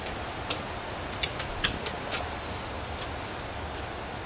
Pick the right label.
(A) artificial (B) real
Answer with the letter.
B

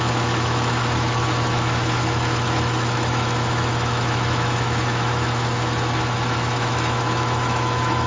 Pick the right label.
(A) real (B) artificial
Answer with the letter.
B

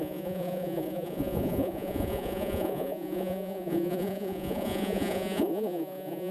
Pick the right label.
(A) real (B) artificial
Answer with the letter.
B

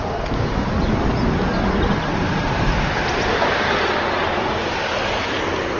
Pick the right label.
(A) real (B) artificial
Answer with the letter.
A